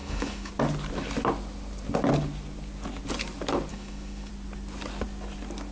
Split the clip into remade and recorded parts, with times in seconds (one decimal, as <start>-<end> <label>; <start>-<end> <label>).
0.0-0.5 remade; 0.5-3.7 recorded; 3.7-4.3 remade; 4.3-5.7 recorded